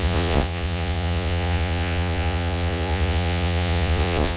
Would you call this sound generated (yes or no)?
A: yes